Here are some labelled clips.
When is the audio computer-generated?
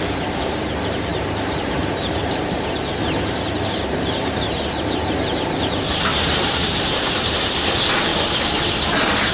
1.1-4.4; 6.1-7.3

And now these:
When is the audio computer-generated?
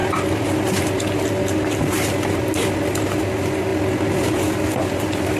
none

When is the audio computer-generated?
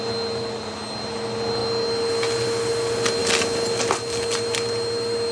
none